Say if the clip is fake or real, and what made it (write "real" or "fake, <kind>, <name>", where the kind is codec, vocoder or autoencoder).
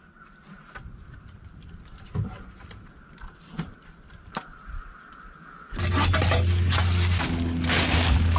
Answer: real